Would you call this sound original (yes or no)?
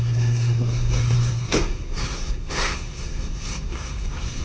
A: no